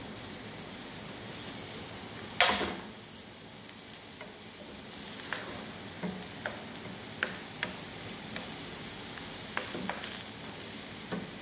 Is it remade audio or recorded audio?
recorded